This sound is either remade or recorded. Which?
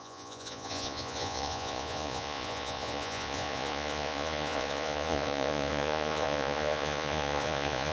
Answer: remade